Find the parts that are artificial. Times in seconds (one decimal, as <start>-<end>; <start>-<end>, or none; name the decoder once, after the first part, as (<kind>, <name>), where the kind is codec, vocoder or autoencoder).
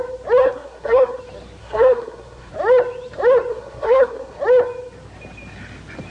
0.4-1.2 (codec, SNAC); 1.6-2.5; 3.5-4.4